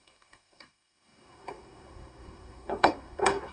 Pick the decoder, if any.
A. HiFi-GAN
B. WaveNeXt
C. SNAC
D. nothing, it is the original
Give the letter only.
C